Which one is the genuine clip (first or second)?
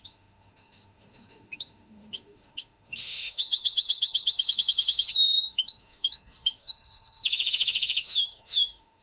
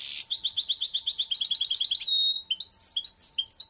second